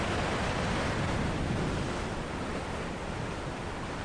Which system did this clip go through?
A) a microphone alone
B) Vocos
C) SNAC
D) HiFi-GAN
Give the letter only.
A